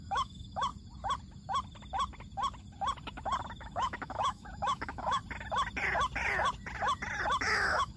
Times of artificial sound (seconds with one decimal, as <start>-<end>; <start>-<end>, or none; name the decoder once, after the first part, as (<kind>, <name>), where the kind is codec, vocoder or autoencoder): 0.0-0.7 (autoencoder, DAC-VAE); 3.6-5.2; 7.4-8.0